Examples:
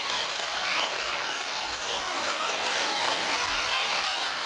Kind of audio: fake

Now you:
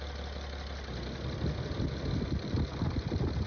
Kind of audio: real